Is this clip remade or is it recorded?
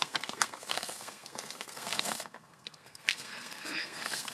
remade